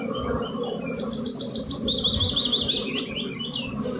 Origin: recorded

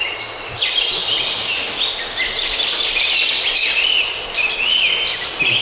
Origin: recorded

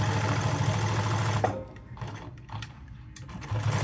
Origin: recorded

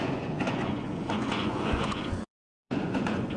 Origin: remade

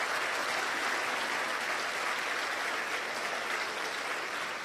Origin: recorded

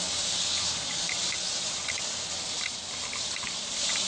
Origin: remade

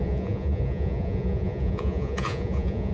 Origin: remade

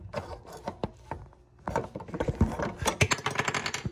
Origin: recorded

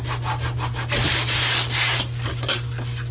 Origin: recorded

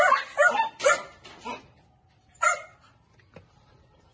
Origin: recorded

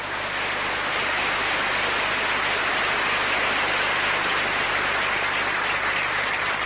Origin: recorded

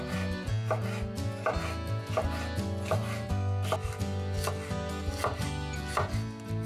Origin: recorded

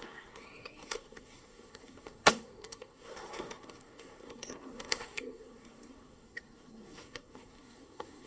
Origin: remade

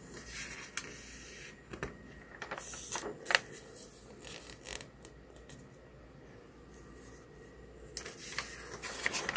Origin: recorded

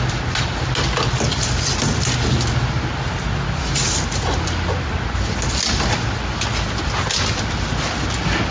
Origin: recorded